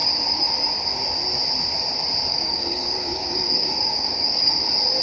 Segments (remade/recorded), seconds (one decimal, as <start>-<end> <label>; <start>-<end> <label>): 0.0-2.3 recorded; 2.3-4.6 remade; 4.6-5.0 recorded